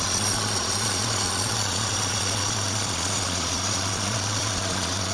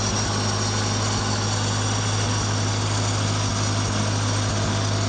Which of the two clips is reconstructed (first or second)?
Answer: first